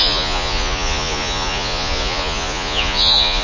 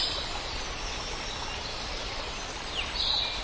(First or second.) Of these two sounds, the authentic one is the second